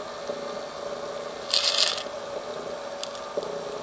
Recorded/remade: recorded